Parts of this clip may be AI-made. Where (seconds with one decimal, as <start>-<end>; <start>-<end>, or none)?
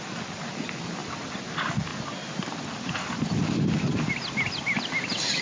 none